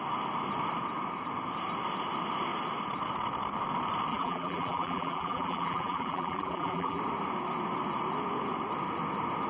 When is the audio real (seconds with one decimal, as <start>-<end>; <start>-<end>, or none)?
0.0-4.1; 7.0-9.5